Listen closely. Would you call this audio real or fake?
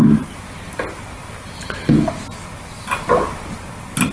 real